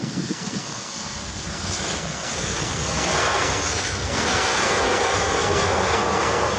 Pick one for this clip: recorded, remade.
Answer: remade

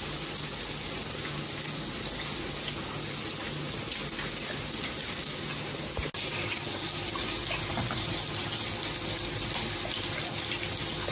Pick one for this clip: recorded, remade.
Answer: recorded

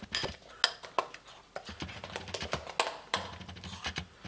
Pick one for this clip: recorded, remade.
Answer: recorded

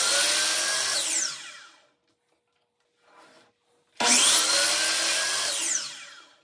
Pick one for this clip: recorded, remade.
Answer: recorded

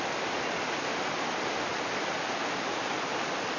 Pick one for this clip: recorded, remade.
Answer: recorded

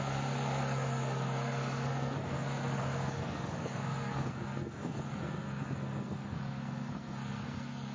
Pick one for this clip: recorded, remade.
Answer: remade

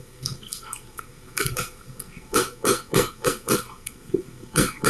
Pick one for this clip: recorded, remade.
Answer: remade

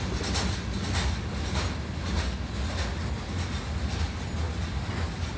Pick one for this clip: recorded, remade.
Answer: recorded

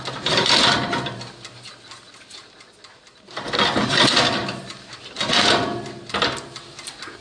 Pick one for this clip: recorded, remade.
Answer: recorded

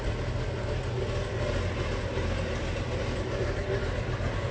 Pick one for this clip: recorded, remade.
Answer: recorded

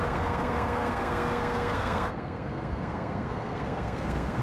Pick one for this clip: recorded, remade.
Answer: remade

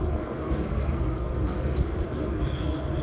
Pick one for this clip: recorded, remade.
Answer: remade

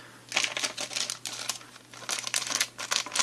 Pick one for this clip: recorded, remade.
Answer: recorded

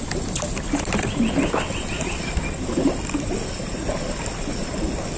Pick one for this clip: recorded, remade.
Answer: recorded